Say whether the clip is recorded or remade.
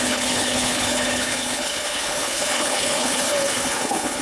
remade